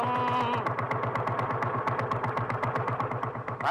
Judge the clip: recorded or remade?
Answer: recorded